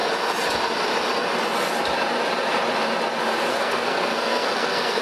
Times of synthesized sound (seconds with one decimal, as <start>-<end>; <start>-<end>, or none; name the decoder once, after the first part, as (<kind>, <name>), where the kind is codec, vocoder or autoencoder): 3.5-5.0 (codec, SNAC)